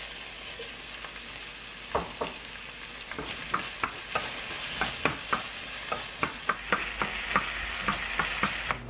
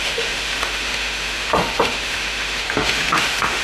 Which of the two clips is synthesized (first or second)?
second